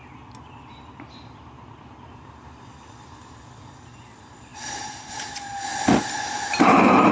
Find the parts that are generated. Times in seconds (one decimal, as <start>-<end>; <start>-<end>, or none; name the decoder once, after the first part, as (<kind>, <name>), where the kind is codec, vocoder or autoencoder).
none